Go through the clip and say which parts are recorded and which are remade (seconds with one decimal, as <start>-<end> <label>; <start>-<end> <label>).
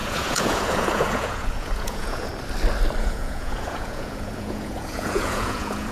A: 0.0-2.3 remade; 2.3-3.0 recorded; 3.0-5.9 remade